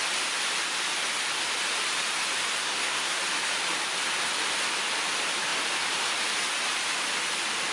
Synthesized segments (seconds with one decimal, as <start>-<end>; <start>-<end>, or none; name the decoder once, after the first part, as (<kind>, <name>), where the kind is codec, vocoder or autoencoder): 2.6-3.2 (codec, SNAC)